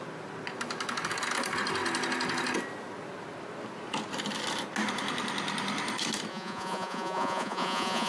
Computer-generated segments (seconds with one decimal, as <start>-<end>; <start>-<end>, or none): 6.3-8.1